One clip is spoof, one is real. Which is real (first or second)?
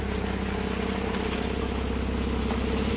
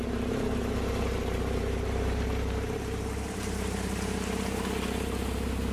first